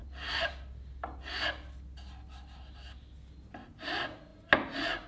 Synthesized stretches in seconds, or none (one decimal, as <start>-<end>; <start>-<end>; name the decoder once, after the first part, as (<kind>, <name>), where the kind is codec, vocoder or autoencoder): 0.0-0.5 (vocoder, BigVGAN v2)